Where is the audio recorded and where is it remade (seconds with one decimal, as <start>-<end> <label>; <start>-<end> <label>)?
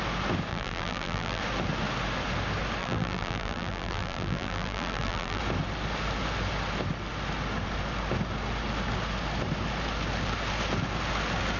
0.0-0.5 recorded; 0.5-1.4 remade; 1.4-2.8 recorded; 2.8-5.4 remade; 5.4-11.6 recorded